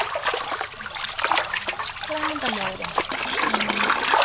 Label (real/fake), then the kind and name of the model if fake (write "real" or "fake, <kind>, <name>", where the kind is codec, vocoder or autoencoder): real